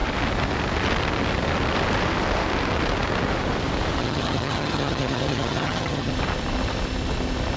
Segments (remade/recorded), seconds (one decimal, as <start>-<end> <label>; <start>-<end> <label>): 0.0-4.0 recorded; 4.0-6.1 remade; 6.1-7.6 recorded